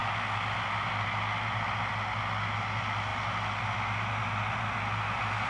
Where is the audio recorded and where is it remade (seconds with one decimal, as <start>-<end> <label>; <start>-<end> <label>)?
0.0-5.5 recorded